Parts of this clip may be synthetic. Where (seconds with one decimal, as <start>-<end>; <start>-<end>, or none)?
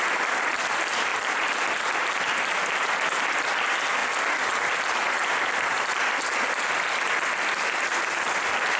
1.1-1.8